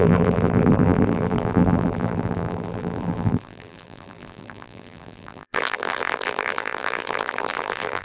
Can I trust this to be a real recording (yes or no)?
no